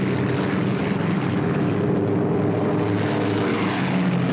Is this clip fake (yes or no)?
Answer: no